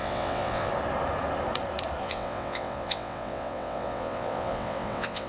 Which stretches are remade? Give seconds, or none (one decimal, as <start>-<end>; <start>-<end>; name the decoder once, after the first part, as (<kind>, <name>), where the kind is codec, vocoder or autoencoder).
0.0-0.7 (vocoder, WaveNeXt); 2.0-5.3